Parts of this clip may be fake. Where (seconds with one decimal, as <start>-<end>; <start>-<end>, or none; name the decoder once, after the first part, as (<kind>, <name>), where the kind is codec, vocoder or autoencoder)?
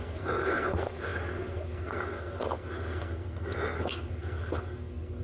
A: 0.0-5.2 (codec, SNAC)